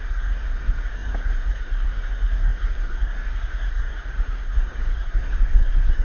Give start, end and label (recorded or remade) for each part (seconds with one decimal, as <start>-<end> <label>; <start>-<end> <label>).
0.0-6.0 remade